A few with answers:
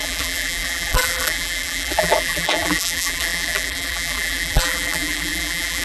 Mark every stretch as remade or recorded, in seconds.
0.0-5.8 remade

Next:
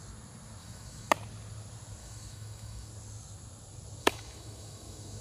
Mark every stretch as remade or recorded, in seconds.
0.0-0.6 recorded; 0.6-1.1 remade; 1.1-2.0 recorded; 2.0-2.9 remade; 2.9-4.0 recorded; 4.0-5.2 remade